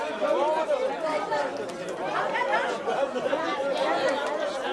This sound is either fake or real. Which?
real